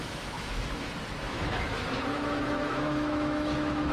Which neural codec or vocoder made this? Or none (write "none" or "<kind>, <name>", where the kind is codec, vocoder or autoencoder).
autoencoder, DAC-VAE